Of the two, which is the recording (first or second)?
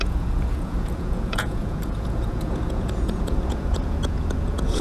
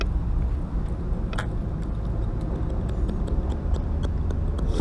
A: second